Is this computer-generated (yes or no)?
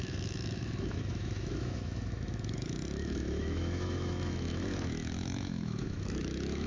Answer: yes